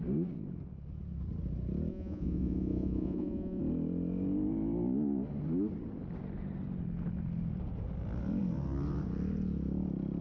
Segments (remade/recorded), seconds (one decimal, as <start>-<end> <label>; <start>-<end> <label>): 0.0-1.9 recorded; 1.9-3.6 remade; 3.6-10.2 recorded